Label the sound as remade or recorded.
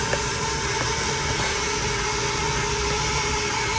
recorded